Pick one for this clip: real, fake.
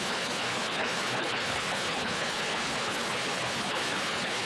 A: fake